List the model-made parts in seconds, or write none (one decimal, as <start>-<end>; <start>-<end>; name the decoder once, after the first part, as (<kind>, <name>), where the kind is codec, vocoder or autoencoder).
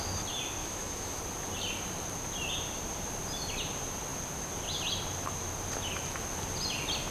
0.6-1.2 (autoencoder, DAC-VAE)